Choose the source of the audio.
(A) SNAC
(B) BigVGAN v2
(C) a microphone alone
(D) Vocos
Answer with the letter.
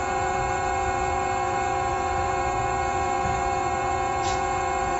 D